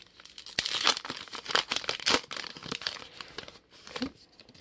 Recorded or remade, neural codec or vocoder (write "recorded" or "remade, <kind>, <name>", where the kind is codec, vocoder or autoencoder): recorded